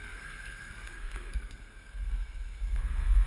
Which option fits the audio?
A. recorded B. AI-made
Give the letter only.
B